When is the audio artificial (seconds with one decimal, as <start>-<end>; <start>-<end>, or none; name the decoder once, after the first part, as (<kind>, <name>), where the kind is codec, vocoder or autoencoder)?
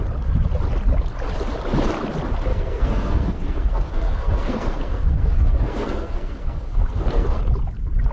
2.5-7.4 (codec, SNAC)